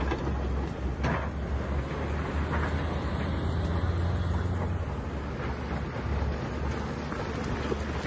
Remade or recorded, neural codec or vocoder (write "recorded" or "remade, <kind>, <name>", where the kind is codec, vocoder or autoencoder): recorded